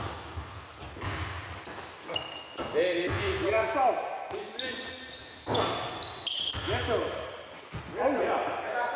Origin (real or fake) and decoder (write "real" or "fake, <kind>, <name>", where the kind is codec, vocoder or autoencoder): real